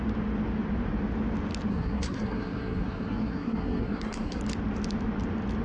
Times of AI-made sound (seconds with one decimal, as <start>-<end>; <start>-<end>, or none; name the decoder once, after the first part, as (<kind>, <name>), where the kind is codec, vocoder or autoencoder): 1.7-4.4 (codec, SNAC)